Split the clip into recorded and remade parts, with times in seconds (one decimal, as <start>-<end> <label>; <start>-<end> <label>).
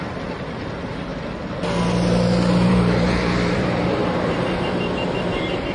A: 0.0-1.1 remade; 1.1-2.7 recorded; 2.7-5.7 remade